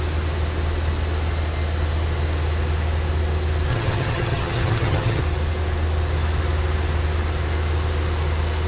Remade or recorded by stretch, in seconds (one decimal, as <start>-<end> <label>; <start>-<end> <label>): 0.0-3.7 recorded; 3.7-5.2 remade; 5.2-8.7 recorded